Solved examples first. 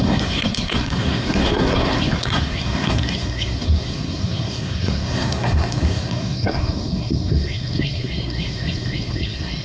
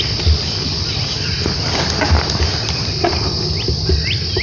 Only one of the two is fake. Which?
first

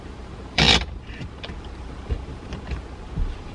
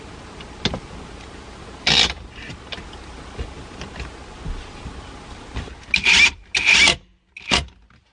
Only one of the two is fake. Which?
first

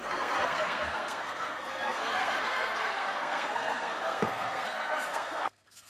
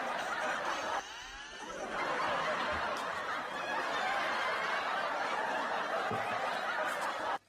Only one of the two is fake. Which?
first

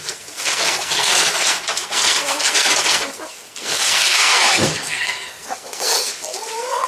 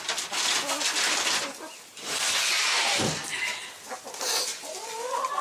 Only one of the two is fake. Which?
first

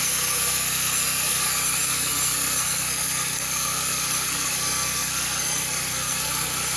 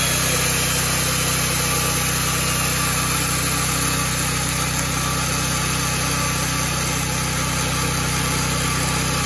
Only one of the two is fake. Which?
first